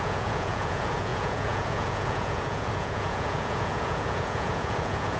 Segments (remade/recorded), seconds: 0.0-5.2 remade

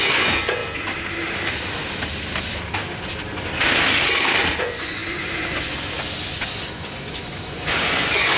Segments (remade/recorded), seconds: 0.0-0.6 remade; 0.6-4.6 recorded; 4.6-8.4 remade

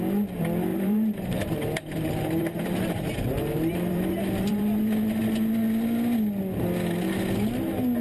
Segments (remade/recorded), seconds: 0.0-0.7 recorded; 0.7-4.6 remade; 4.6-8.0 recorded

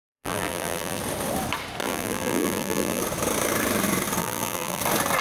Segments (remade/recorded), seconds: 0.0-1.0 remade; 1.0-1.8 recorded; 1.8-3.0 remade; 3.0-4.2 recorded; 4.2-4.8 remade; 4.8-5.2 recorded

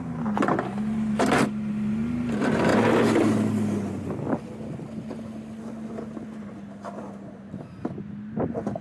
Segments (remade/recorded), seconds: 0.0-8.8 recorded

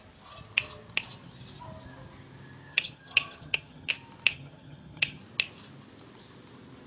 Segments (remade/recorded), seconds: 0.0-2.7 recorded; 2.7-3.9 remade; 3.9-4.3 recorded; 4.3-5.2 remade; 5.2-6.9 recorded

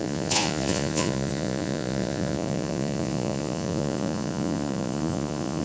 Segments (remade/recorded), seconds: 0.0-5.6 remade